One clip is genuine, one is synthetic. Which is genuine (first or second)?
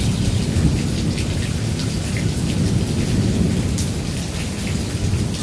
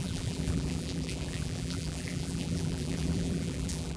first